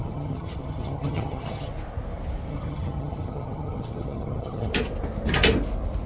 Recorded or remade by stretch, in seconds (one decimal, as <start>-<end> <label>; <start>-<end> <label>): 0.0-1.7 remade; 1.7-2.5 recorded; 2.5-4.7 remade; 4.7-6.1 recorded